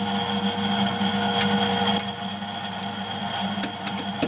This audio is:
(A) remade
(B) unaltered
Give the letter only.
B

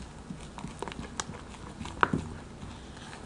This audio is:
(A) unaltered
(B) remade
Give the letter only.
A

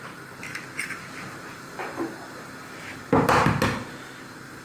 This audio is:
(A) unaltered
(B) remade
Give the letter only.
A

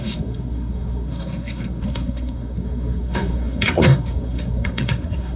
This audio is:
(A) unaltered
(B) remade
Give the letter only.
B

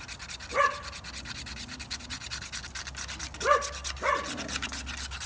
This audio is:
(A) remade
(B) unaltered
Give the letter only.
B